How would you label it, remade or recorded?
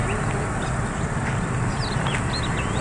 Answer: recorded